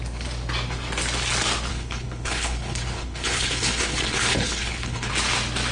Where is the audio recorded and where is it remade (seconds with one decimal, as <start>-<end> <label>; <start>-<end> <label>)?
0.0-1.7 recorded; 1.7-5.1 remade; 5.1-5.7 recorded

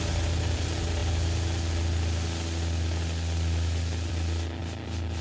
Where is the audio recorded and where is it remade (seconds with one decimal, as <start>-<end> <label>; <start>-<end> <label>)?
0.0-5.2 recorded

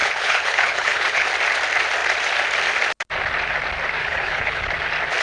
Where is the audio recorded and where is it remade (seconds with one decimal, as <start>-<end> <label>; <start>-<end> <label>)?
0.0-1.3 remade; 1.3-4.0 recorded; 4.0-4.7 remade; 4.7-5.2 recorded